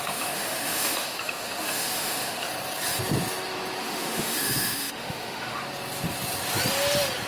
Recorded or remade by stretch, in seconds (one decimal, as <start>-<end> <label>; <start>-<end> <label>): 0.0-2.5 remade; 2.5-3.8 recorded; 3.8-5.6 remade; 5.6-7.3 recorded